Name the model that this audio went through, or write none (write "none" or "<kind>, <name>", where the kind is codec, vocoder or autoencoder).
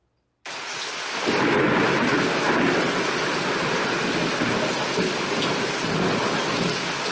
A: none